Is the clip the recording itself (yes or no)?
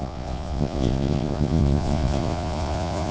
no